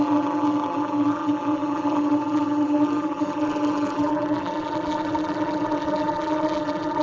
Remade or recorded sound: remade